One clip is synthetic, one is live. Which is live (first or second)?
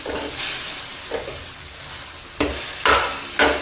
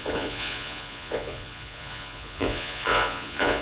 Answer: first